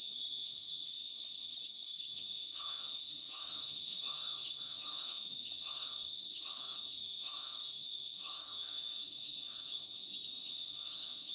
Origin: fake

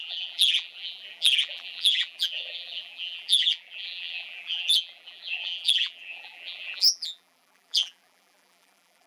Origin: fake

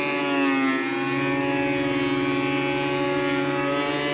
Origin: real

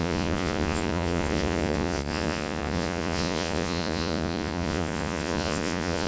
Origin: fake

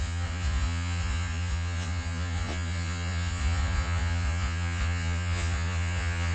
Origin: fake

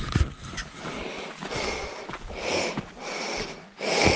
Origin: real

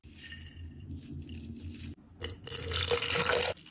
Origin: real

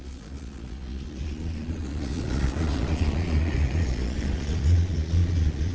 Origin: fake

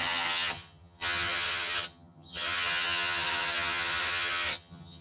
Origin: fake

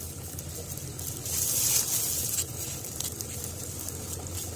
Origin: real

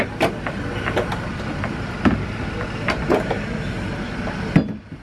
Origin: real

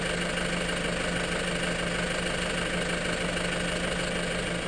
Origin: real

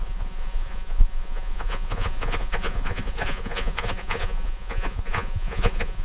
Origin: fake